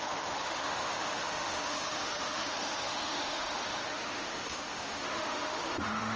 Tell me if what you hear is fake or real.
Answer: fake